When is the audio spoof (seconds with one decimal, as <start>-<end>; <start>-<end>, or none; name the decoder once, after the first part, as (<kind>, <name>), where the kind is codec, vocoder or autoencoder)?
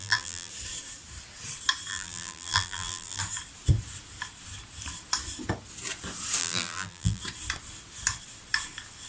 0.0-0.5 (vocoder, BigVGAN v2); 1.9-3.2; 6.4-7.2